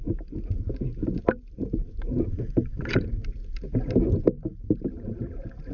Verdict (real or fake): fake